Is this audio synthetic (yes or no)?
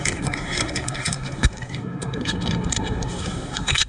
yes